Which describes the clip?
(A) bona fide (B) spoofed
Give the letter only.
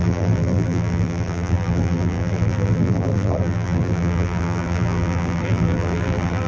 B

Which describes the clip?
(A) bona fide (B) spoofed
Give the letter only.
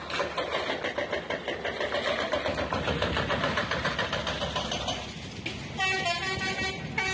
A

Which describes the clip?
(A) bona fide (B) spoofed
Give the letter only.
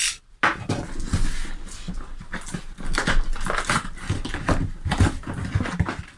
A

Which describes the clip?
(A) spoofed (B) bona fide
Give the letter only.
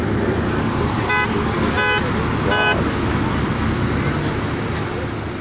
B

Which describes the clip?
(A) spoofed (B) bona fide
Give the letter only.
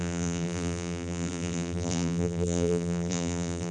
A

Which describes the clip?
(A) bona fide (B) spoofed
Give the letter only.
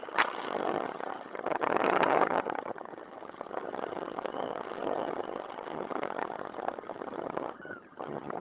B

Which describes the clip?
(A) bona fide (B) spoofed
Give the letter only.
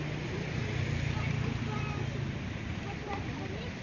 A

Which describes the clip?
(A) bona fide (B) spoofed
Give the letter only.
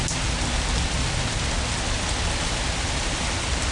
A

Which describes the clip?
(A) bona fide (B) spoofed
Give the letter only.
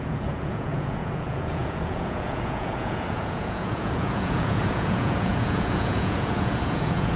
B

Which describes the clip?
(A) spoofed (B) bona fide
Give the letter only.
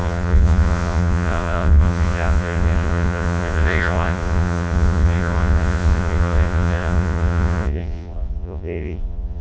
A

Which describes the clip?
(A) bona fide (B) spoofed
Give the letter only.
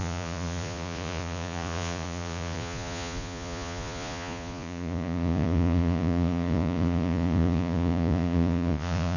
B